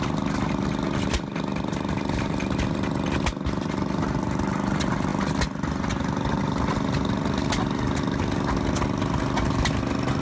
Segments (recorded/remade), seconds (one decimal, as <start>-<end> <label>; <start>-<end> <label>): 0.0-10.2 recorded